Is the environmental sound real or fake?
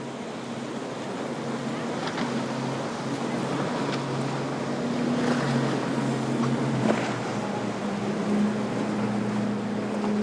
real